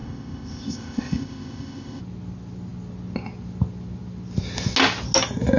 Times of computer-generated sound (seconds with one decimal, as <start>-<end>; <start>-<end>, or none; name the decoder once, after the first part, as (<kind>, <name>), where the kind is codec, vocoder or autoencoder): 0.0-2.0 (codec, ZipCodec)